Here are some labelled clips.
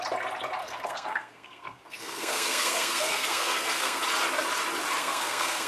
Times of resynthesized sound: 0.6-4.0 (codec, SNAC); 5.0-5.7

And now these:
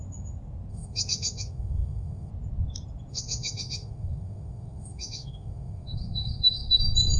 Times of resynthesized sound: 0.7-2.3 (autoencoder, DAC-VAE); 3.1-6.8

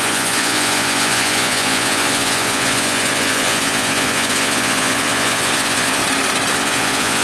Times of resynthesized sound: 0.0-6.0 (vocoder, Vocos); 6.5-7.2

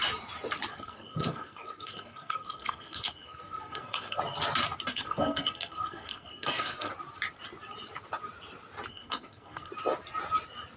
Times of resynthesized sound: 0.7-4.2 (codec, SNAC); 4.9-6.9; 8.9-9.7

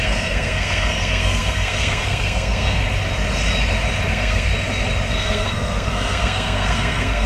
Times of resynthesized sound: 0.0-2.8 (codec, SNAC); 4.1-4.5; 5.1-7.3

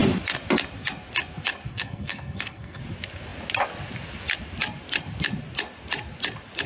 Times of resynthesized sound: 1.7-2.8 (codec, SNAC)